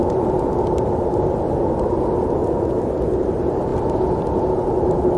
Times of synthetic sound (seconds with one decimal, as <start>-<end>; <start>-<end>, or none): none